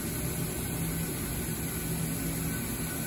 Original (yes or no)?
yes